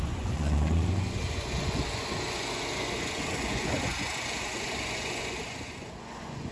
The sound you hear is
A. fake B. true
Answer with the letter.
A